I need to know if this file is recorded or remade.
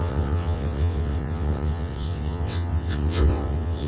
remade